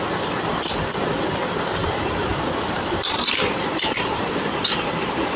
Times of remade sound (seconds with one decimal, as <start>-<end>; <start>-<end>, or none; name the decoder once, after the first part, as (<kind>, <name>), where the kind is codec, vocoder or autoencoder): 1.8-5.0 (vocoder, BigVGAN v2)